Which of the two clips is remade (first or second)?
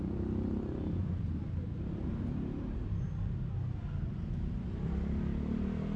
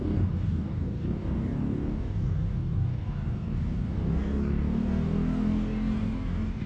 second